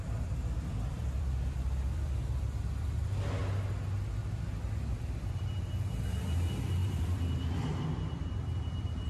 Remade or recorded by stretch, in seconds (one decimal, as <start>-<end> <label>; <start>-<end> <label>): 0.0-3.4 remade; 3.4-4.5 recorded; 4.5-9.1 remade